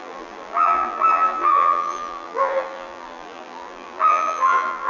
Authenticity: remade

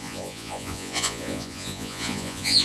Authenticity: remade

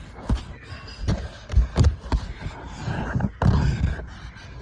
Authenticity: recorded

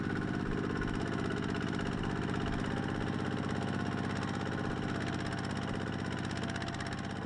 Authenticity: recorded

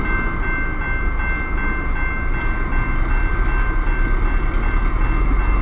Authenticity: recorded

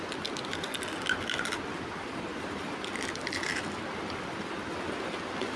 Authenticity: recorded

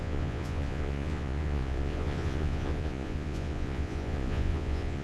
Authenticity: remade